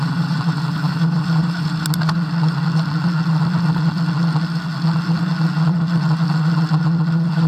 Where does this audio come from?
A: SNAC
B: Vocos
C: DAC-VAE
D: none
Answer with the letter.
D